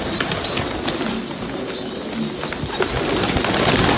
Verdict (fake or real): real